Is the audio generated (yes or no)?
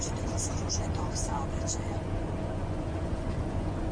yes